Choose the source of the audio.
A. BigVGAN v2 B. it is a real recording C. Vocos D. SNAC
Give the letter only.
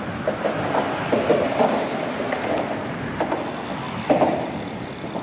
B